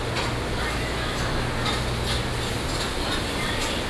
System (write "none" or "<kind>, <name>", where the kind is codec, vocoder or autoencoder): none